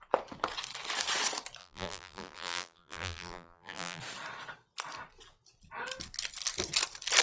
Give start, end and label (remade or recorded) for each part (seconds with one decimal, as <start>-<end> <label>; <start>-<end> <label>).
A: 0.0-1.6 recorded; 1.6-4.0 remade; 4.0-7.2 recorded